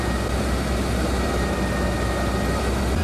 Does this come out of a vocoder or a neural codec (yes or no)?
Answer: no